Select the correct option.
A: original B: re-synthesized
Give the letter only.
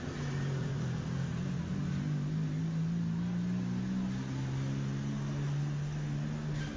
A